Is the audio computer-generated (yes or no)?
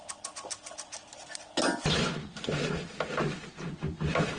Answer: no